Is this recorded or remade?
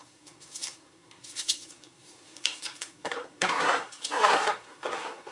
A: remade